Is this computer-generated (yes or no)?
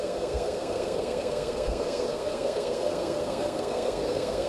yes